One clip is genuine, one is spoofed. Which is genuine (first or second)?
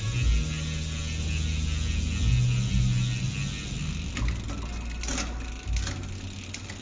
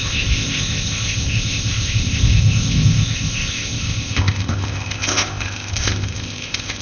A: first